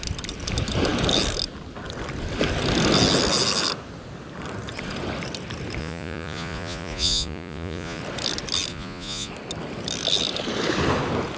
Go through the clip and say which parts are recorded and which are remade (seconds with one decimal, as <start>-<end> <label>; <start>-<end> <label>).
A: 0.0-5.8 recorded; 5.8-8.0 remade; 8.0-8.7 recorded; 8.7-9.3 remade; 9.3-11.4 recorded